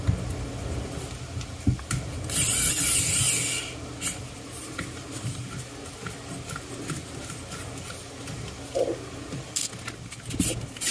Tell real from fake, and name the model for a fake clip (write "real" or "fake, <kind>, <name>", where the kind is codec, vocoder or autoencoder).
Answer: real